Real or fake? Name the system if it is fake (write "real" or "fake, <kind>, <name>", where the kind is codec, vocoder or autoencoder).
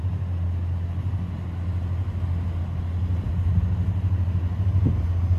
real